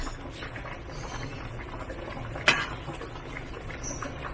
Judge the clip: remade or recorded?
recorded